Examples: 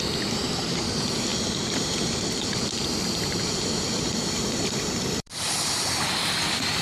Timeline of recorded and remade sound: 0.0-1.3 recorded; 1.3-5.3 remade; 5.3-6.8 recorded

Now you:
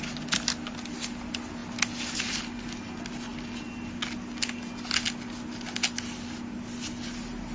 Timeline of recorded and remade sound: 0.0-7.5 recorded